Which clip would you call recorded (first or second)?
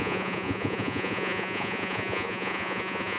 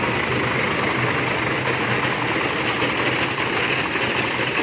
second